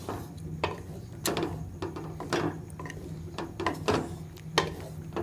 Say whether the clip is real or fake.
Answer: real